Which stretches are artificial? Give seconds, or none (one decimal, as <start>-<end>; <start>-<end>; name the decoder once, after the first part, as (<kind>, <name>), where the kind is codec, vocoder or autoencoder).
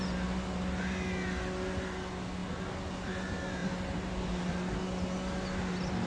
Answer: none